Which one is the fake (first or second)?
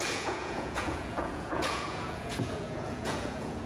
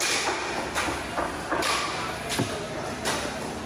first